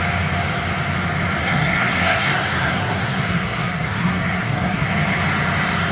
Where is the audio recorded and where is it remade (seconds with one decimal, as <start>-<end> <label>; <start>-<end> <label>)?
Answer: 0.0-1.4 recorded; 1.4-4.9 remade; 4.9-5.9 recorded